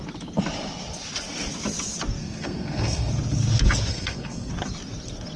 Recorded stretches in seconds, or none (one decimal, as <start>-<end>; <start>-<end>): 0.0-2.2; 3.1-3.9; 4.5-5.4

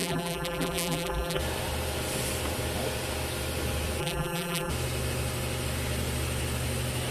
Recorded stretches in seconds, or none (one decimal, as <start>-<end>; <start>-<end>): 1.4-4.0; 4.7-7.1